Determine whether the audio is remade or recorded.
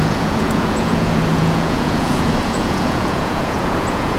remade